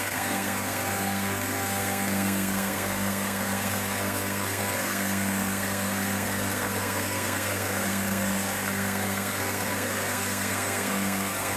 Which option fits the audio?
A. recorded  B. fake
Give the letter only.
B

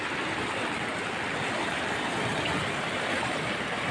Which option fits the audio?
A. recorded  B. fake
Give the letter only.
A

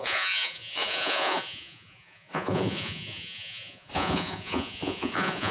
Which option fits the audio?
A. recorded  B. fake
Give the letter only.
B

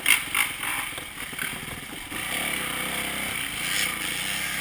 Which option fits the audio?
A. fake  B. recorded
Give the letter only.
B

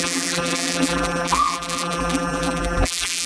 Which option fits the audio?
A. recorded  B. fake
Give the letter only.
B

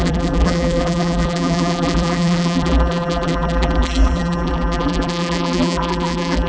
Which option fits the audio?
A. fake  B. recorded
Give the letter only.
A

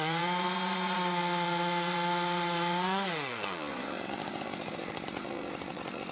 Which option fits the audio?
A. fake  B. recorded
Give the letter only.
A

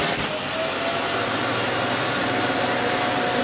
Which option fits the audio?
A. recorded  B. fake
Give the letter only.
A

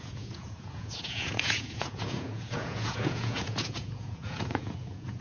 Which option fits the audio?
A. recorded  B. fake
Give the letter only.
B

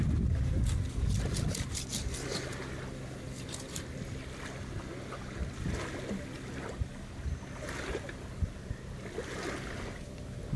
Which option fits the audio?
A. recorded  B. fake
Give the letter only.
A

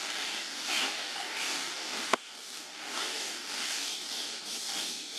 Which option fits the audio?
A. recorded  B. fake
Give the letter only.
B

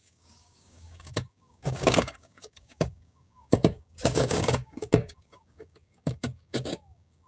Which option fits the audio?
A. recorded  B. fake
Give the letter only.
B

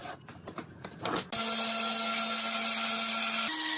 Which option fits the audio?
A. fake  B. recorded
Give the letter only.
B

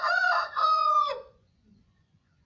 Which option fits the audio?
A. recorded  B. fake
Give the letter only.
B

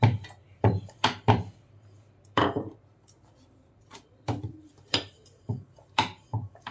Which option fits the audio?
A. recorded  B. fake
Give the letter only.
B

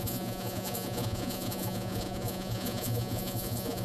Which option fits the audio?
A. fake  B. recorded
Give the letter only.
A